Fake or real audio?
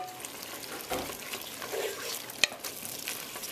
real